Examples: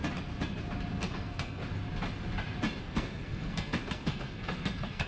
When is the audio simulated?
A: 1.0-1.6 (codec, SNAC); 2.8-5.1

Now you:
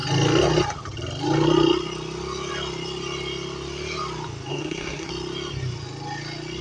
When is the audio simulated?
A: 4.5-5.1 (codec, SNAC)

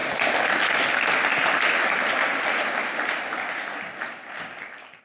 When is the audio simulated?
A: none